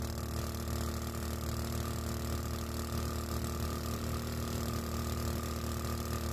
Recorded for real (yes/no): yes